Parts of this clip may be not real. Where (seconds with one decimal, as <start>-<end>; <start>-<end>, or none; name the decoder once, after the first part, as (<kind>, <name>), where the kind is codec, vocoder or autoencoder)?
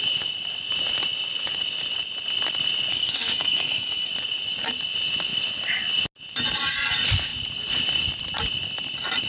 2.9-4.1 (codec, DAC)